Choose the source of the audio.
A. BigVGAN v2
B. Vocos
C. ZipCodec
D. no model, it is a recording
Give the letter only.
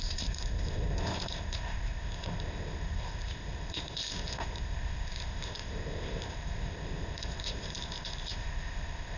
C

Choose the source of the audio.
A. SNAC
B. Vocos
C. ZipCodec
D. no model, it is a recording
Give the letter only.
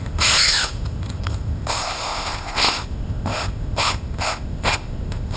C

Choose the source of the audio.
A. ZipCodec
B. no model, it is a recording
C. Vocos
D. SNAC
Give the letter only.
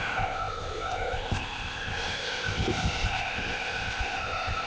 A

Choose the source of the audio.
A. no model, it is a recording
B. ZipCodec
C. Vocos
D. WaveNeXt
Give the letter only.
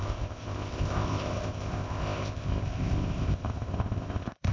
B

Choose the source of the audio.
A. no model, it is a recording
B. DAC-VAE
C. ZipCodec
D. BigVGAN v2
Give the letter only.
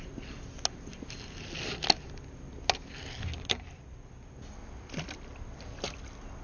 A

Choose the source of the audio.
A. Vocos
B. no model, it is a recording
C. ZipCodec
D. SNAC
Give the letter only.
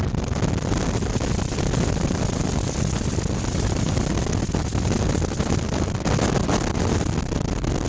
B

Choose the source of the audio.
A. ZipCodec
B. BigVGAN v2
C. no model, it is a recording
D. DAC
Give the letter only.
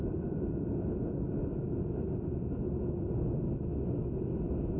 C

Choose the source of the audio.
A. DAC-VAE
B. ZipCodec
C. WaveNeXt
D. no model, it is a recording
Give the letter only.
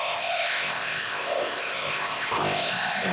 B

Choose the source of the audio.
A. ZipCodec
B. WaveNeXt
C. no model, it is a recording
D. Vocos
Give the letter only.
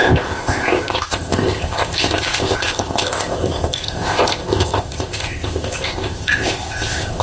A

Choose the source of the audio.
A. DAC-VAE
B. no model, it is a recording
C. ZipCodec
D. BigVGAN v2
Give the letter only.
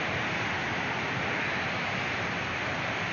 B